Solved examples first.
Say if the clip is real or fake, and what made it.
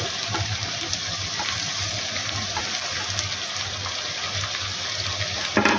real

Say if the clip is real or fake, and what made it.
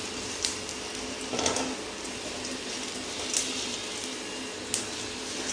real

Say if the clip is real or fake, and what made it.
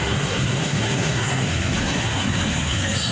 fake, codec, SNAC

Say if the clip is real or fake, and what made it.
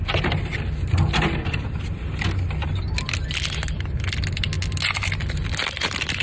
real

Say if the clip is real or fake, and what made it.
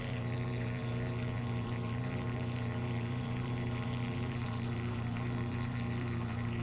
fake, vocoder, BigVGAN v2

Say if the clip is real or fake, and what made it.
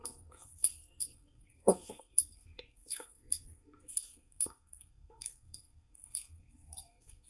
fake, codec, SNAC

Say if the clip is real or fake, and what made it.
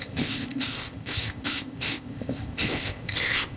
fake, codec, ZipCodec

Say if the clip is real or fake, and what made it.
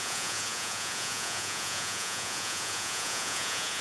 fake, vocoder, Vocos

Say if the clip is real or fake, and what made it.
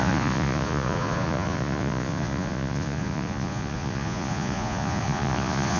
fake, vocoder, Vocos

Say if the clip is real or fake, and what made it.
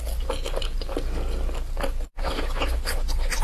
real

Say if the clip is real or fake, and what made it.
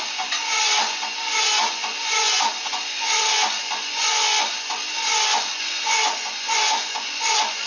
fake, vocoder, Vocos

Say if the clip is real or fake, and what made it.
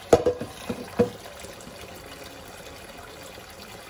real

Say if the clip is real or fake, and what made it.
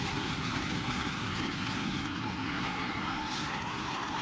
fake, codec, SNAC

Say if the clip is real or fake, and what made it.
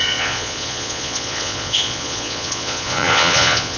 fake, vocoder, Vocos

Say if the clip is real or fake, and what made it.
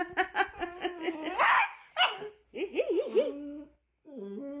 real